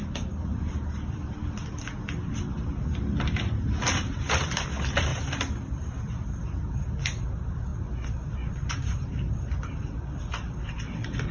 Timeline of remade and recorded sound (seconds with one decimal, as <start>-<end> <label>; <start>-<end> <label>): 0.0-1.4 remade; 1.4-3.6 recorded; 3.6-11.3 remade